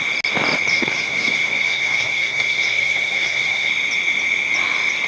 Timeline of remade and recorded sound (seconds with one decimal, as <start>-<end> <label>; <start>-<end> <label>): 0.0-0.7 recorded; 0.7-3.7 remade; 3.7-5.1 recorded